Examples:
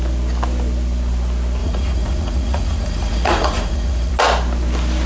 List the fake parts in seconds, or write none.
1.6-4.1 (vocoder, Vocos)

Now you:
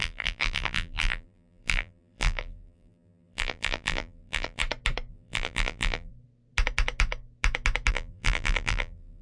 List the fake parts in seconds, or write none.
0.0-4.6 (vocoder, BigVGAN v2); 5.1-6.1; 7.9-9.2